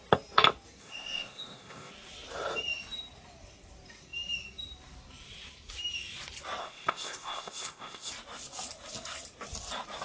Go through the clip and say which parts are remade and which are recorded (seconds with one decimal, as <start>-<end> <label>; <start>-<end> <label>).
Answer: 0.0-0.8 recorded; 0.8-1.9 remade; 1.9-6.6 recorded; 6.6-8.1 remade; 8.1-10.0 recorded